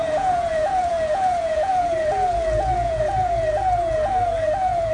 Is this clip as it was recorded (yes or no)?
no